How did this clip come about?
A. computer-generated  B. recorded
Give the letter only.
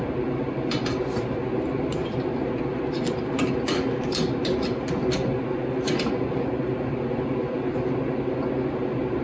B